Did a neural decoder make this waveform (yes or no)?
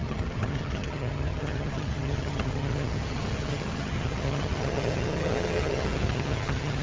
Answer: yes